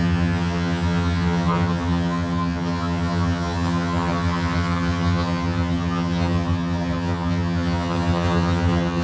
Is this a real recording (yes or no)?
no